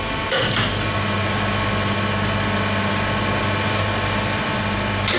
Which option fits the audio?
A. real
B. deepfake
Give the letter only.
A